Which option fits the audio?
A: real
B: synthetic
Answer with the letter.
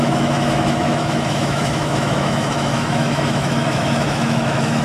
B